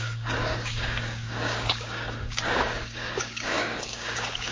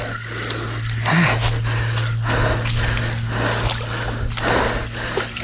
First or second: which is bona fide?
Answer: second